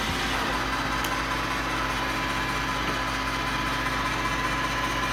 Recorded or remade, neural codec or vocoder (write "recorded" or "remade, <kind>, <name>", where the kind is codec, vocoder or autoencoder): recorded